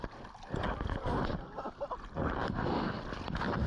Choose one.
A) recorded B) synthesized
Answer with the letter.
A